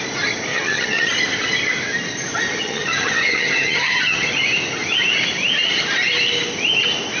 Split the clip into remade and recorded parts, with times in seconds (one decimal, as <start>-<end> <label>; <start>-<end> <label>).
0.0-0.5 recorded; 0.5-1.1 remade; 1.1-2.6 recorded; 2.6-4.3 remade; 4.3-7.2 recorded